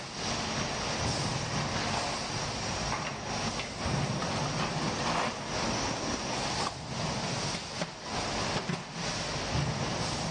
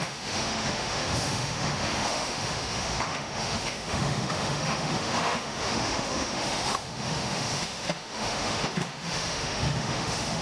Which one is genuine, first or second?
first